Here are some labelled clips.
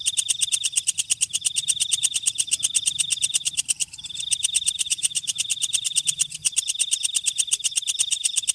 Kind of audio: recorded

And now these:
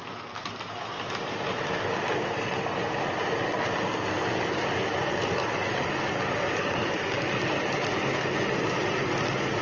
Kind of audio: recorded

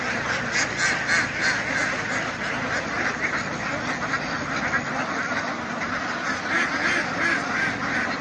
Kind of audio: recorded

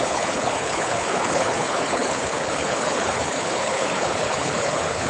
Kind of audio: remade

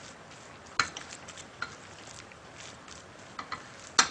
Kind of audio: recorded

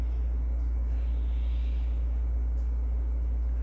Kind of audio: recorded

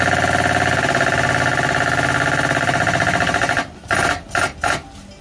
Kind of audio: recorded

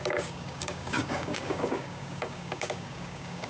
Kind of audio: remade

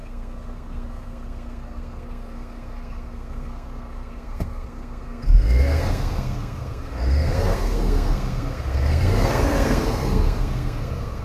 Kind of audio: remade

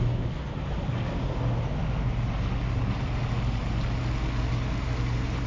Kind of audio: recorded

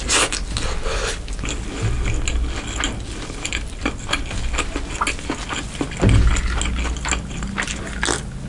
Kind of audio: recorded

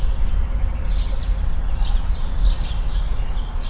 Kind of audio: recorded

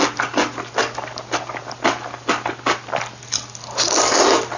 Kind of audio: recorded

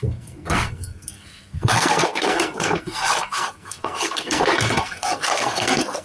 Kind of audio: remade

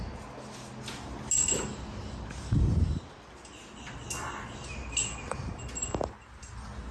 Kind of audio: recorded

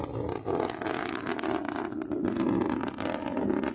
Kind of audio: recorded